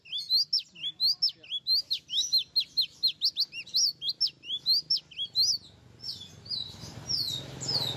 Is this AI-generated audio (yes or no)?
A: no